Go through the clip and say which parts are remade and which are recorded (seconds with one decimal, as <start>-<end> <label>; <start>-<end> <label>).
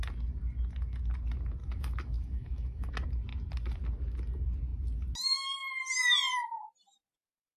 0.0-1.6 recorded; 1.6-2.9 remade; 2.9-7.6 recorded